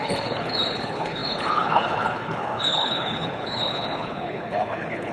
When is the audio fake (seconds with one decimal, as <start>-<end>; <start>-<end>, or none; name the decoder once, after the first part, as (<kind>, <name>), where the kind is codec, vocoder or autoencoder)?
0.0-5.1 (codec, HILCodec)